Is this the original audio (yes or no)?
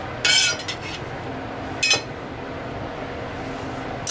yes